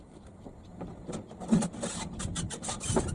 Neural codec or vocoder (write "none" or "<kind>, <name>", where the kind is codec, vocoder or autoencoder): none